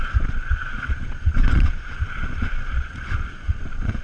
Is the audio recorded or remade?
remade